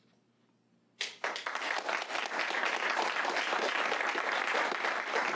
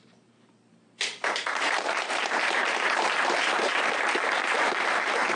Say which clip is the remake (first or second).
second